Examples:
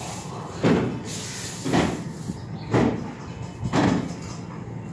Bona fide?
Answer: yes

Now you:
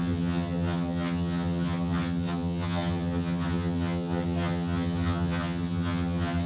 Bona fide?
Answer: no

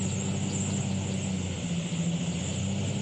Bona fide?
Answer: yes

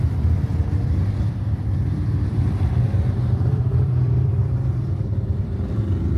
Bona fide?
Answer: no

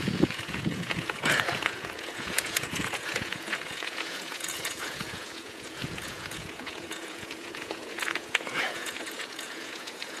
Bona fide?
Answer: no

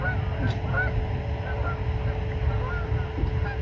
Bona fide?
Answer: yes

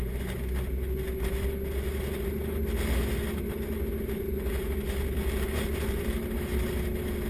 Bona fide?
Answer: yes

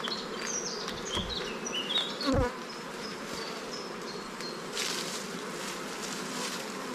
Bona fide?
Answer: yes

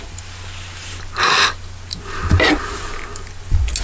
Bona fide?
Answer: yes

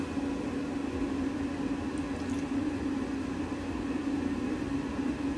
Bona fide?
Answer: yes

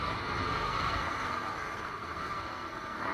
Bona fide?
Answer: no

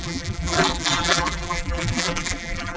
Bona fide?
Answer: no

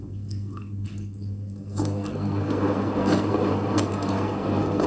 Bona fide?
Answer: no